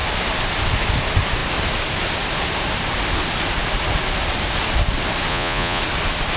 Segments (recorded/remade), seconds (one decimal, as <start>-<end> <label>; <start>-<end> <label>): 0.0-5.3 recorded; 5.3-5.8 remade; 5.8-6.4 recorded